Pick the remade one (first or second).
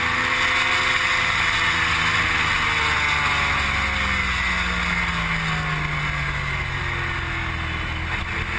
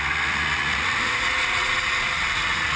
second